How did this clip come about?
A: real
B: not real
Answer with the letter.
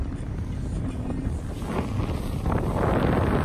A